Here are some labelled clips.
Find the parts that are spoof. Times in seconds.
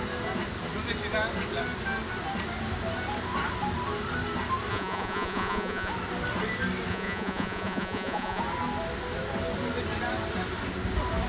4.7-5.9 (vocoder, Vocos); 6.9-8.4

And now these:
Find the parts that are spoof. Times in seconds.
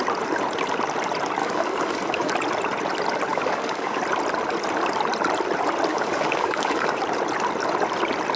1.4-2.3 (codec, DAC); 3.3-4.0; 5.9-7.0